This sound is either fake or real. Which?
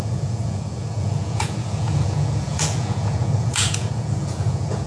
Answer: fake